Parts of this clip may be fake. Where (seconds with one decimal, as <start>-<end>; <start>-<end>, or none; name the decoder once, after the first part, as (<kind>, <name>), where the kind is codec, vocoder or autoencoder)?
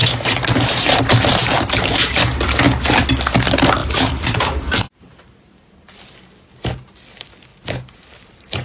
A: 0.0-0.8 (vocoder, BigVGAN v2); 1.4-2.0; 3.8-6.2